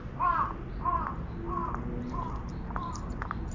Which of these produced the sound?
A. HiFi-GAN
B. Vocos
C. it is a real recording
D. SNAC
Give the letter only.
C